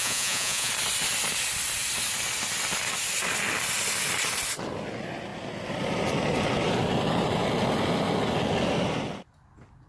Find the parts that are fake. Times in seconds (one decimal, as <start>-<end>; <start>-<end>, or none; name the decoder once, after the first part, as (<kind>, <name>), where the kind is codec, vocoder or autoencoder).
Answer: 0.0-0.7 (vocoder, Vocos)